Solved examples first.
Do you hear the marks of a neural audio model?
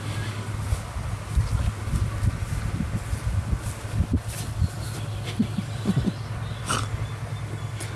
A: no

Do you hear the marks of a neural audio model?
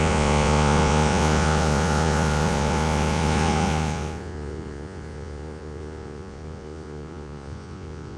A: yes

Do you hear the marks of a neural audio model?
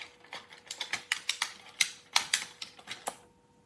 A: no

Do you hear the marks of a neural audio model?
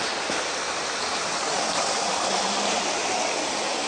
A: yes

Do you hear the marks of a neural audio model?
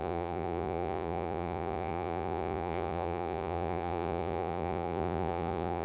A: yes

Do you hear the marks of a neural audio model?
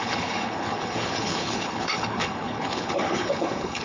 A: yes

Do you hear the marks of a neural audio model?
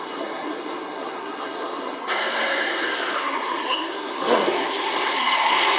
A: yes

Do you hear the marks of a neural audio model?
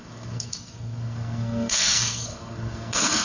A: yes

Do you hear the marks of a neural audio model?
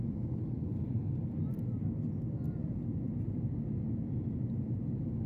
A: no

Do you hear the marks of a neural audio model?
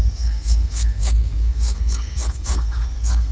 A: yes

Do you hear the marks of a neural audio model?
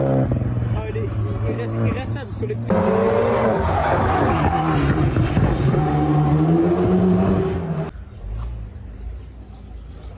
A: no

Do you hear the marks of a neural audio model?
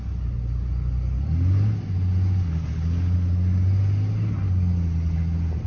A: no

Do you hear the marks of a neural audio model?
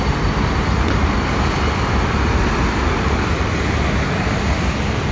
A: no